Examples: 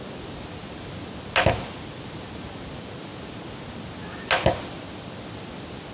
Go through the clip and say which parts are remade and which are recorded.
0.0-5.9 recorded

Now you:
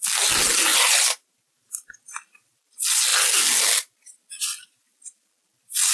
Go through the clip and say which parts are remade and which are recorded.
0.0-0.7 recorded; 0.7-2.0 remade; 2.0-5.9 recorded

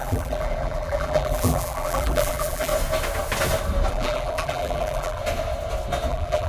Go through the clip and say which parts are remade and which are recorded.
0.0-2.7 remade; 2.7-3.9 recorded; 3.9-5.2 remade; 5.2-6.1 recorded; 6.1-6.5 remade

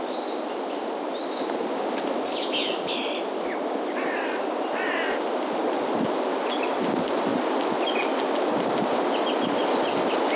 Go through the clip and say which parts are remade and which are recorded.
0.0-10.4 recorded

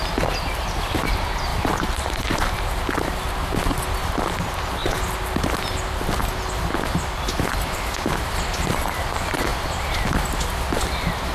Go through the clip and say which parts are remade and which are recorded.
0.0-0.5 recorded; 0.5-1.0 remade; 1.0-1.5 recorded; 1.5-2.7 remade; 2.7-11.3 recorded

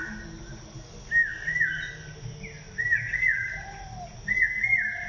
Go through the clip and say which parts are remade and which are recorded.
0.0-5.1 recorded

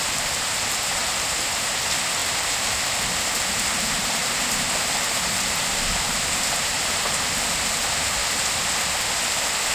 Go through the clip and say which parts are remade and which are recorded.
0.0-8.2 remade; 8.2-9.7 recorded

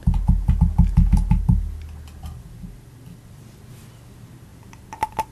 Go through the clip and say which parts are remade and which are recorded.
0.0-5.3 recorded